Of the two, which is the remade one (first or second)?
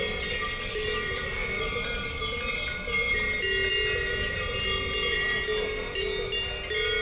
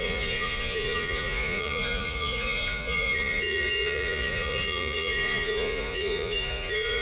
second